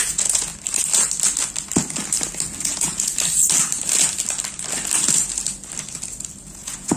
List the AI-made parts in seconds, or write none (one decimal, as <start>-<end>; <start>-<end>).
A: 0.0-0.5; 2.6-3.1; 6.4-7.0